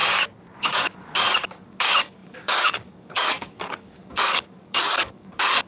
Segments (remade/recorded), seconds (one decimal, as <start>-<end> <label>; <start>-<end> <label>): 0.0-0.6 recorded; 0.6-5.7 remade